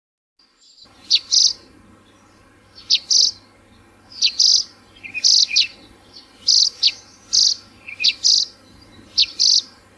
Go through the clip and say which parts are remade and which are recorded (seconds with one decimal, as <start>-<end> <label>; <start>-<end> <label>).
0.0-10.0 recorded